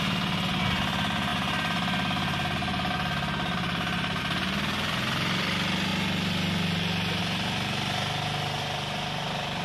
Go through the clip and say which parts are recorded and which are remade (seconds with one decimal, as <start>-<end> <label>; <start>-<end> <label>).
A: 0.0-9.6 recorded